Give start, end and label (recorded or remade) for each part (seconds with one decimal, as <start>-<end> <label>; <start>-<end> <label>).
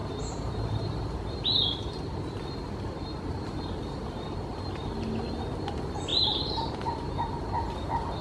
0.0-1.3 remade; 1.3-8.2 recorded